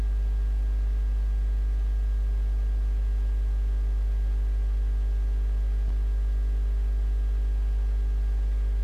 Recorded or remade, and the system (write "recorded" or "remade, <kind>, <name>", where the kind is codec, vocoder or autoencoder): recorded